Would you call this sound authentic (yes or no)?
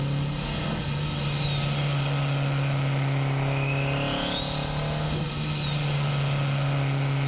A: yes